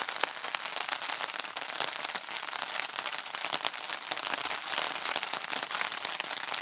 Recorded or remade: recorded